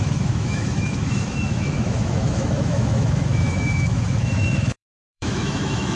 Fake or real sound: fake